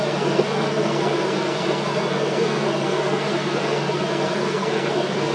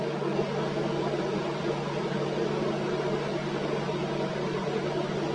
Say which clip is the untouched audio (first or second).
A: second